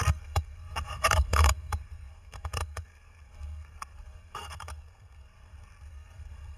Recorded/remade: remade